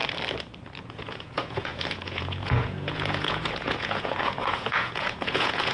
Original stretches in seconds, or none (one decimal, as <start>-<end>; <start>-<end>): 0.0-0.8